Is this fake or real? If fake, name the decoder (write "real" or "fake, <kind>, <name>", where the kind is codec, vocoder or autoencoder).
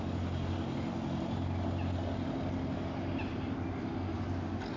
real